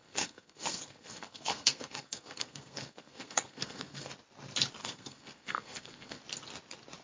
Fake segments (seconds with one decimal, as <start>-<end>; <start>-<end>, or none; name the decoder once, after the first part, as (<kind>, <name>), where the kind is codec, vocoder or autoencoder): 0.0-4.1 (codec, SNAC); 4.8-6.2